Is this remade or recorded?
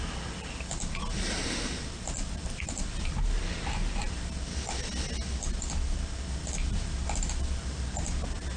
recorded